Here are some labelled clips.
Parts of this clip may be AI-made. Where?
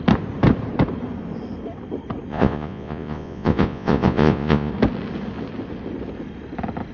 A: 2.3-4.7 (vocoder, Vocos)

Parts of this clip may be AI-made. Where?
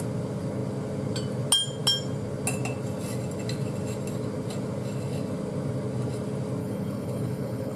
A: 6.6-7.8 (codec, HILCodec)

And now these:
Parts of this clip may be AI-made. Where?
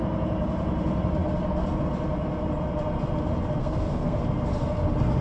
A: 3.6-4.2 (codec, SNAC)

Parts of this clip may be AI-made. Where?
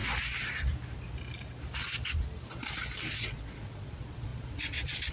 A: 3.1-5.1 (vocoder, Vocos)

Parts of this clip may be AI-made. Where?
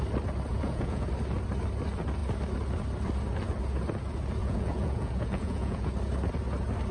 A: 0.5-1.1 (vocoder, Vocos); 4.4-5.9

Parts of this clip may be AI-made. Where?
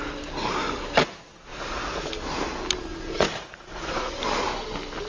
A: 1.5-2.1 (vocoder, Vocos); 2.9-4.2